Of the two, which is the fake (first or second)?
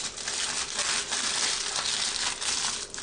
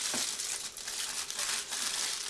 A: second